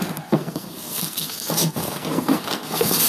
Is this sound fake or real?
fake